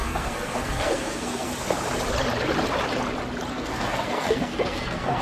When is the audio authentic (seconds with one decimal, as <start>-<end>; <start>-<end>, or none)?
1.5-3.5